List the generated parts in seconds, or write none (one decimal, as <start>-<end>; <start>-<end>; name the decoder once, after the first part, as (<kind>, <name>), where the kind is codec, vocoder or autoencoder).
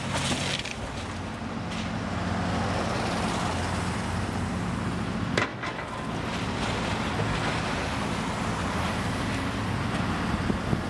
none